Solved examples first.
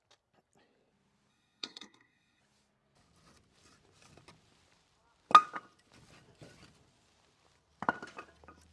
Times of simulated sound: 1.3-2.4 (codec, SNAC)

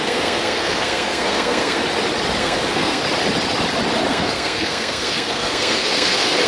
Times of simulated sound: 0.0-1.8 (codec, SNAC); 2.4-3.0; 4.1-6.5

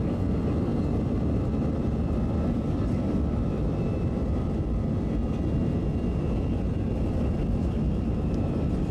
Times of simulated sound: 0.0-0.7 (vocoder, BigVGAN v2); 1.7-5.1; 6.6-8.9

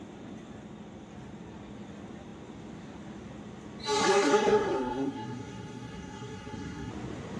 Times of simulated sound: 4.0-6.9 (codec, SNAC)

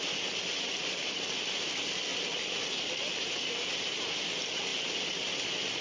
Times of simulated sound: none

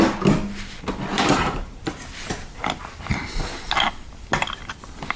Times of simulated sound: 1.1-2.0 (vocoder, BigVGAN v2)

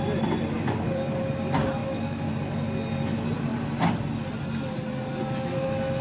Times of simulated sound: 1.8-2.3 (autoencoder, DAC-VAE)